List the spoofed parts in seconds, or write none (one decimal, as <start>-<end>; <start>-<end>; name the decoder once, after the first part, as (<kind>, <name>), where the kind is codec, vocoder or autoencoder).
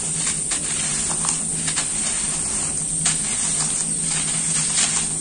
none